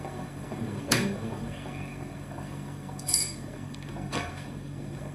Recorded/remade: remade